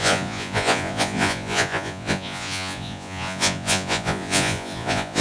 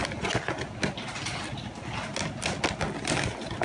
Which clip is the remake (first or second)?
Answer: first